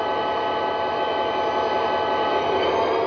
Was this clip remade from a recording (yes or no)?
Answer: no